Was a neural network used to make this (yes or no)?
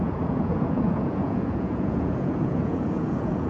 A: yes